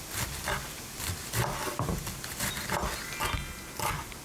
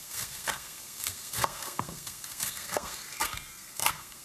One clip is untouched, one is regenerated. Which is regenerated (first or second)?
second